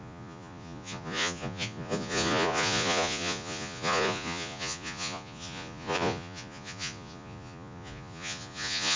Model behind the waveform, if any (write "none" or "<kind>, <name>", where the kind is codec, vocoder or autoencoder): vocoder, Vocos